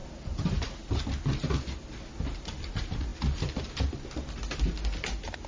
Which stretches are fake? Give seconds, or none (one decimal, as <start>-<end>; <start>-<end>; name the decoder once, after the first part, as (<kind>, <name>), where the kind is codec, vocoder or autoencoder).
none